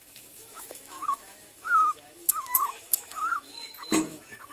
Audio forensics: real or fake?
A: fake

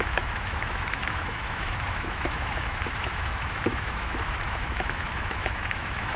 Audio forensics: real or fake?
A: fake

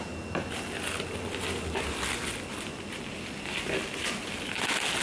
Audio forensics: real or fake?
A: real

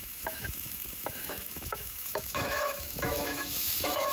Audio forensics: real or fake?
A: fake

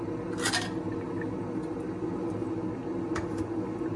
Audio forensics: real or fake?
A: real